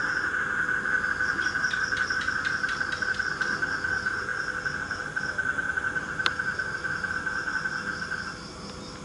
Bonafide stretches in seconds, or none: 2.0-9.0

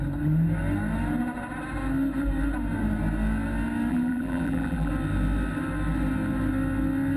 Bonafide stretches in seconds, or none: 0.0-3.9; 4.9-7.2

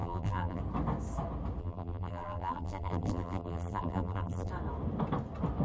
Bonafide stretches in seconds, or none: 0.6-1.6; 4.5-5.6

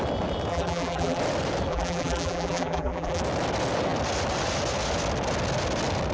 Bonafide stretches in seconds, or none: 0.0-0.5; 1.2-1.7; 3.2-6.1